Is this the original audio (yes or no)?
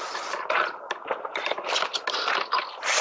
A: yes